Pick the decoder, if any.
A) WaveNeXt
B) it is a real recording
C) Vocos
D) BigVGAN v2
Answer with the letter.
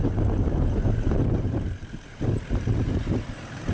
D